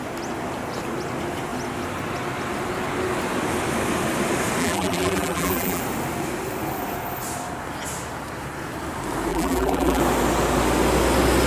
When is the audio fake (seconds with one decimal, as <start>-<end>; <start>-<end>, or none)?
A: 4.6-5.8; 9.3-10.0